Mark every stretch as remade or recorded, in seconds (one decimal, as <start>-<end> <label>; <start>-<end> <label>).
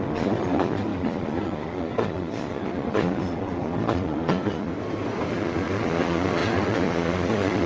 0.0-4.7 remade; 4.7-5.3 recorded; 5.3-7.7 remade